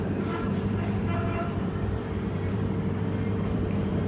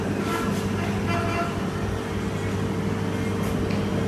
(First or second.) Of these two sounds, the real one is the second